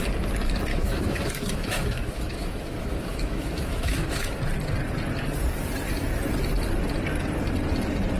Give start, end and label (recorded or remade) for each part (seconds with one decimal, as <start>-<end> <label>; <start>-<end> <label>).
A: 0.0-0.7 recorded; 0.7-4.4 remade; 4.4-8.2 recorded

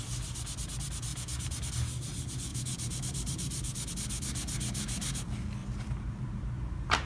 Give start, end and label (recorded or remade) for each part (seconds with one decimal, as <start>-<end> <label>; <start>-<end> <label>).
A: 0.0-1.1 recorded; 1.1-1.7 remade; 1.7-2.5 recorded; 2.5-3.9 remade; 3.9-5.6 recorded; 5.6-7.1 remade

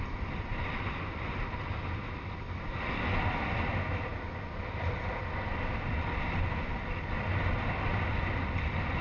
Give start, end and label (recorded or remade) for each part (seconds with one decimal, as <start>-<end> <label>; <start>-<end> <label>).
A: 0.0-9.0 recorded

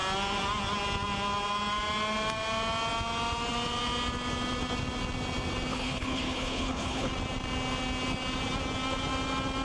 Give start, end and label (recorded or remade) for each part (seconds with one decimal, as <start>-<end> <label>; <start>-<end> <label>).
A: 0.0-5.7 recorded; 5.7-7.1 remade; 7.1-9.6 recorded

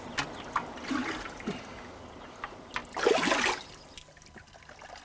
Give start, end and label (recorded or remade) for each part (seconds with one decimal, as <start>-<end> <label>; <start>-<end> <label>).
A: 0.0-5.0 recorded

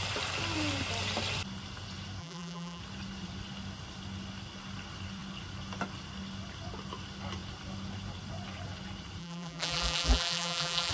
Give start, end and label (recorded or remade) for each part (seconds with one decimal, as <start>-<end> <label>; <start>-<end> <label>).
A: 0.0-2.2 recorded; 2.2-2.8 remade; 2.8-9.2 recorded; 9.2-10.9 remade

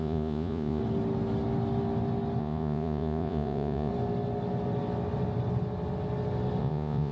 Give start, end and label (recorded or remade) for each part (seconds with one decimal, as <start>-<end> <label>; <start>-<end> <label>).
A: 0.0-0.8 remade; 0.8-2.4 recorded; 2.4-3.9 remade; 3.9-6.6 recorded; 6.6-7.1 remade

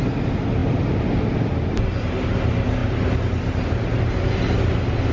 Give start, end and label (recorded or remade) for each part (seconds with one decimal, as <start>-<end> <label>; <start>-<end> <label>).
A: 0.0-5.1 recorded